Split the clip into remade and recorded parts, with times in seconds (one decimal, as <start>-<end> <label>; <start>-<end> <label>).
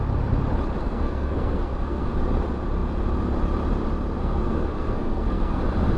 0.0-0.8 recorded; 0.8-2.1 remade; 2.1-4.2 recorded; 4.2-5.6 remade; 5.6-6.0 recorded